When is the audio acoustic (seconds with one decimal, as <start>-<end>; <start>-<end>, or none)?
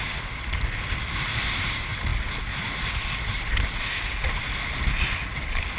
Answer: 0.0-5.8